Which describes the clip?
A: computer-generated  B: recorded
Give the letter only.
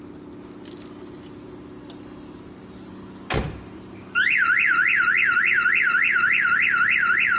B